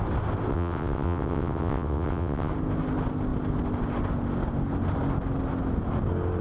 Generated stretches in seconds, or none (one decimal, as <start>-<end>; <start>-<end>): 0.5-2.5